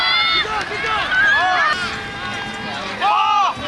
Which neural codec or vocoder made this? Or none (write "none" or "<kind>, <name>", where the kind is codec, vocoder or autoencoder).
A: none